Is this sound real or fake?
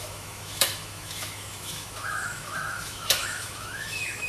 fake